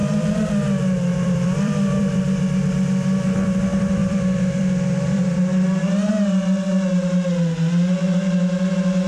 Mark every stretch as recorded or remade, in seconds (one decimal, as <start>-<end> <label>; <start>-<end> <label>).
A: 0.0-0.5 remade; 0.5-1.1 recorded; 1.1-2.2 remade; 2.2-4.0 recorded; 4.0-6.1 remade; 6.1-9.1 recorded